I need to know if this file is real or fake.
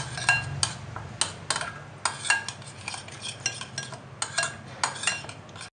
real